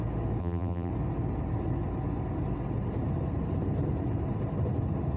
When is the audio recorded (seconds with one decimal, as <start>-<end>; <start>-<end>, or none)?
0.0-0.4; 0.9-5.2